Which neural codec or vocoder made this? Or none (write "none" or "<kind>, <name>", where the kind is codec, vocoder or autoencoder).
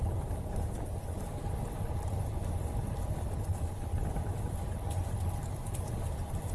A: none